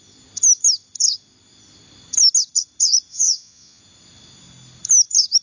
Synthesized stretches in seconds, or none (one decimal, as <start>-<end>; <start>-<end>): 3.1-3.8